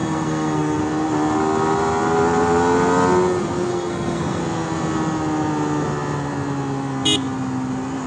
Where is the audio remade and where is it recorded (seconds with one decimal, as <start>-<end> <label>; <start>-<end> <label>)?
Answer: 0.0-0.8 remade; 0.8-3.7 recorded; 3.7-4.4 remade; 4.4-8.1 recorded

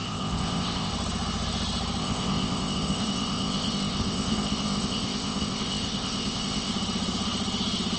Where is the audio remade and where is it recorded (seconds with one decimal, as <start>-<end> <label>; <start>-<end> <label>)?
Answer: 0.0-0.9 remade; 0.9-2.0 recorded; 2.0-6.7 remade; 6.7-8.0 recorded

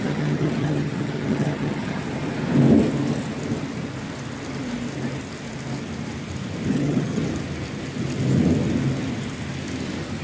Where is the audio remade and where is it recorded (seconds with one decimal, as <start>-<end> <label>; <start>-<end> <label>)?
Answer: 0.0-2.0 remade; 2.0-6.7 recorded; 6.7-7.2 remade; 7.2-10.2 recorded

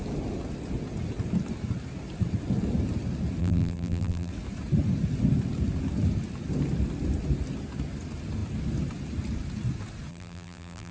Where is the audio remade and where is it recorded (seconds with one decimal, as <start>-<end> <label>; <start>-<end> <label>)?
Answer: 0.0-3.4 recorded; 3.4-4.3 remade; 4.3-10.1 recorded; 10.1-10.9 remade

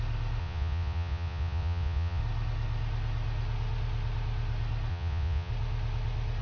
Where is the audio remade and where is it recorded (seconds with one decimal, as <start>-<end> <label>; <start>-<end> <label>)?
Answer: 0.0-0.4 recorded; 0.4-2.2 remade; 2.2-4.9 recorded; 4.9-5.5 remade; 5.5-6.4 recorded

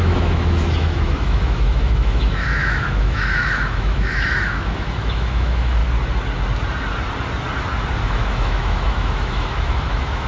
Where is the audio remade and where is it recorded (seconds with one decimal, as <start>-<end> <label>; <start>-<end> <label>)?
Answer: 0.0-5.8 remade; 5.8-8.0 recorded; 8.0-10.3 remade